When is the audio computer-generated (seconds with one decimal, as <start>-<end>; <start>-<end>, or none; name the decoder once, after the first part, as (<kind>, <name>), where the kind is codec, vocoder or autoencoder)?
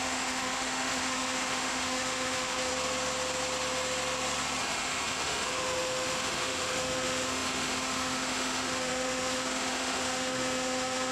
0.0-2.7 (autoencoder, DAC-VAE); 4.6-11.1